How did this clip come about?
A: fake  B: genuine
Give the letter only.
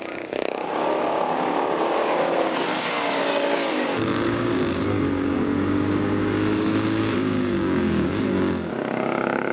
A